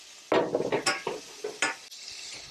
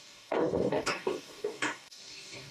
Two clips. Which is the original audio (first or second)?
first